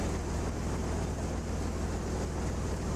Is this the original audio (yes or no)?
yes